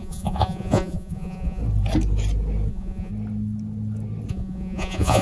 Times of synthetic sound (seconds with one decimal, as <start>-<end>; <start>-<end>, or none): 0.0-1.6; 2.7-3.1; 4.3-5.2